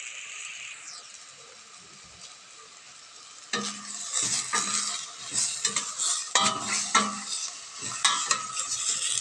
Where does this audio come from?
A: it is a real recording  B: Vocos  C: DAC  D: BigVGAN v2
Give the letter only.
A